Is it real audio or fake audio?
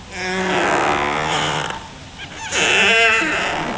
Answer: real